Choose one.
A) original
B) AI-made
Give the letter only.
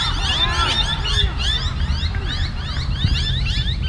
B